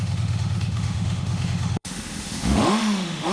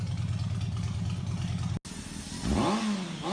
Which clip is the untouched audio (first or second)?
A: second